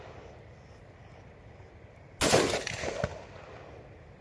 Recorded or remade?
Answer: recorded